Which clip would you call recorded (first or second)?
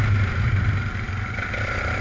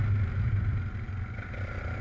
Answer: second